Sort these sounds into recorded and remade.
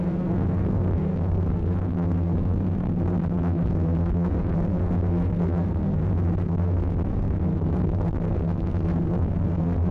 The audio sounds remade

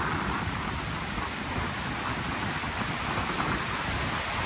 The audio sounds recorded